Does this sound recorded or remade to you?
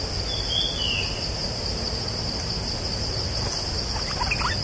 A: recorded